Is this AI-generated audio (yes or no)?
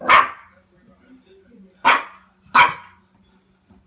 no